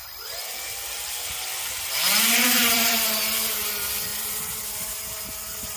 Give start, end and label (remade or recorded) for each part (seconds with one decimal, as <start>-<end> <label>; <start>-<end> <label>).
0.0-3.5 remade; 3.5-5.8 recorded